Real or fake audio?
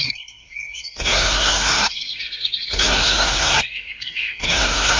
fake